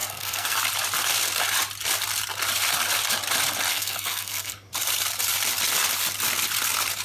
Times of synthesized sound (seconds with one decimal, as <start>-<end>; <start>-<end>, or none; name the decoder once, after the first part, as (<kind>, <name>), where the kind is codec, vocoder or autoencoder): 0.0-0.6 (codec, SNAC); 3.7-4.7

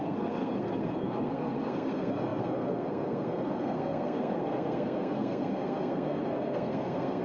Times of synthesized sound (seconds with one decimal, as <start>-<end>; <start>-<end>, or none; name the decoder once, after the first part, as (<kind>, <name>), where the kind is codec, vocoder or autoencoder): 0.0-7.2 (codec, SNAC)

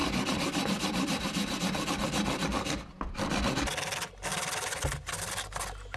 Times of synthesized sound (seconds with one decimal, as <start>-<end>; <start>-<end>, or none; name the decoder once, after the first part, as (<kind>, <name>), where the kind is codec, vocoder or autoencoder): 0.0-3.6 (vocoder, BigVGAN v2); 4.3-5.4

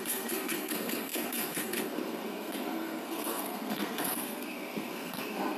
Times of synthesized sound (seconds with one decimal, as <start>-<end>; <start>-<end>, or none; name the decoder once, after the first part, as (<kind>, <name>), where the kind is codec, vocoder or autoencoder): 0.0-5.6 (codec, SNAC)

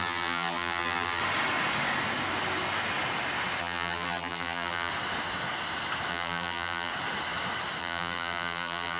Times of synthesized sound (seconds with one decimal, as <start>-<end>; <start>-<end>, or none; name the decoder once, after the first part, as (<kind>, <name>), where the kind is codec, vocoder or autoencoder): 0.0-1.2 (vocoder, BigVGAN v2); 3.6-4.9; 6.1-6.9; 7.8-9.0